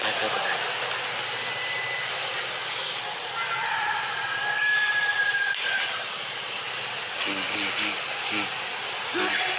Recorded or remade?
recorded